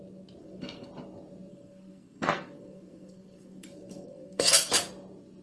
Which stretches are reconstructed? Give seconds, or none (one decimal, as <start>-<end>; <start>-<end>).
0.4-0.9; 1.5-4.7